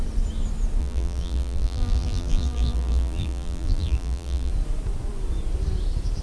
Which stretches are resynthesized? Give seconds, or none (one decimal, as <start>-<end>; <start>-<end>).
0.8-4.5